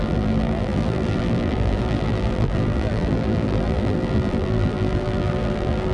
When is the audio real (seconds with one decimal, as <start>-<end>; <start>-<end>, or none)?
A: none